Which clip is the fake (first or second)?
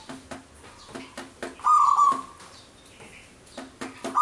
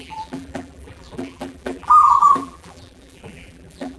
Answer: second